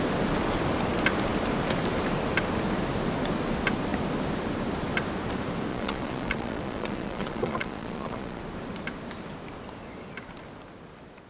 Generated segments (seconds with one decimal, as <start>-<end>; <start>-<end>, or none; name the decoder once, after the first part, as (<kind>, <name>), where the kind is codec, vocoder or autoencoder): 5.7-8.4 (vocoder, Vocos)

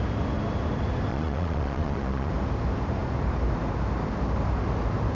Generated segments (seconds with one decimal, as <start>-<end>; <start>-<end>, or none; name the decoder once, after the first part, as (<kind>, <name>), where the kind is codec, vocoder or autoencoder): 1.1-2.3 (vocoder, Vocos)